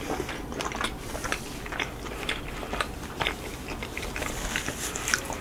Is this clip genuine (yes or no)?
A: yes